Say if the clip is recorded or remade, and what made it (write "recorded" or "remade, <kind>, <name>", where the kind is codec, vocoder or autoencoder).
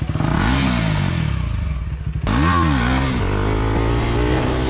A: recorded